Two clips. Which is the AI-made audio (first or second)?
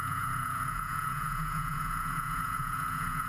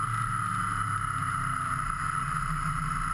first